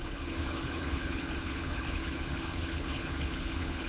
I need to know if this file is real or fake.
fake